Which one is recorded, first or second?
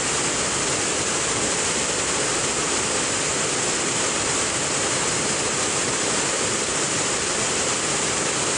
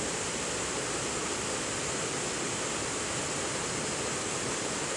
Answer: second